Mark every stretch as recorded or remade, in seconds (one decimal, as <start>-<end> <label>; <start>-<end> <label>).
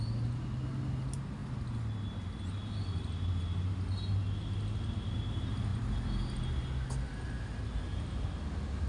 0.0-8.9 recorded